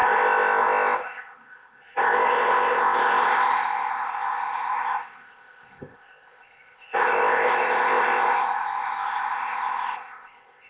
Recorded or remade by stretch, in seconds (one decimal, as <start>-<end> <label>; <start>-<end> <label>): 0.0-10.7 remade